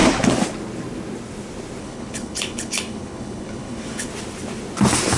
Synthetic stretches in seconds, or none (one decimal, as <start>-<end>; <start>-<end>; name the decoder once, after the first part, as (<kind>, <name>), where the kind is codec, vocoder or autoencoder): 1.8-4.1 (codec, HILCodec)

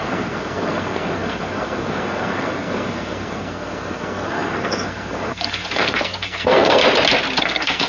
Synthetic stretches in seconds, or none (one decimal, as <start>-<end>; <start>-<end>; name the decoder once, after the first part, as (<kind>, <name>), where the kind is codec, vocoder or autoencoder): 0.0-6.8 (codec, SNAC); 7.4-7.9

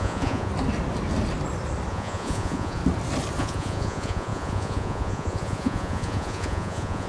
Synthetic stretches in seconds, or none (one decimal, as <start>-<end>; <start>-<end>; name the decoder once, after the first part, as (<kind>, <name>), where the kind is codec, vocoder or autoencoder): 0.0-0.5 (vocoder, Vocos); 1.9-2.8; 3.4-7.1